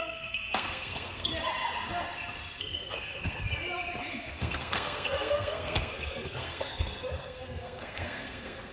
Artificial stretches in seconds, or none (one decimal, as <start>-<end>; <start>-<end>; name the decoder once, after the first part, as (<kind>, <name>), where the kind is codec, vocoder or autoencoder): 0.0-1.3 (codec, SNAC); 2.6-3.6; 4.1-8.7